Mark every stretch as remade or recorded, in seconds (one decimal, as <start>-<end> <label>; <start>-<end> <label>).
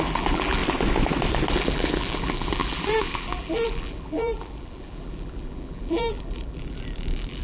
0.0-0.6 remade; 0.6-1.5 recorded; 1.5-7.4 remade